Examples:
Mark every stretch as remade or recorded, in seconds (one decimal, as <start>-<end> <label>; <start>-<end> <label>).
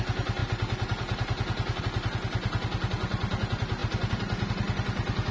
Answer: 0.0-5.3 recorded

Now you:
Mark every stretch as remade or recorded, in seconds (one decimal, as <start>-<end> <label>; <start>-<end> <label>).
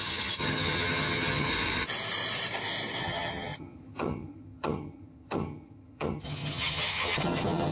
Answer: 0.0-1.5 remade; 1.5-3.0 recorded; 3.0-7.7 remade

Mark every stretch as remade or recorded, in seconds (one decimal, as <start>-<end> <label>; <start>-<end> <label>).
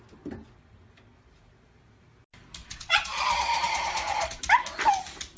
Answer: 0.0-2.6 recorded; 2.6-4.4 remade; 4.4-5.4 recorded